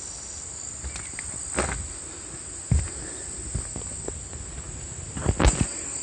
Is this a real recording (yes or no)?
yes